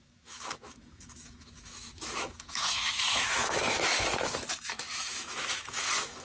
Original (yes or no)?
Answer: no